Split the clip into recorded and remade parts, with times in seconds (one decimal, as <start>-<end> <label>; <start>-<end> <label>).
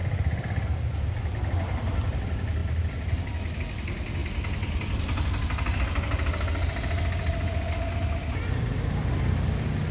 0.0-2.6 recorded; 2.6-3.6 remade; 3.6-9.9 recorded